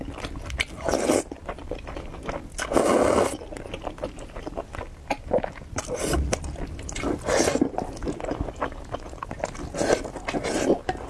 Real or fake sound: real